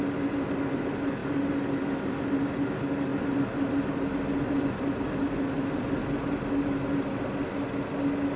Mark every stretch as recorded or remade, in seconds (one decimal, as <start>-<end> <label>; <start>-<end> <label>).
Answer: 0.0-8.4 recorded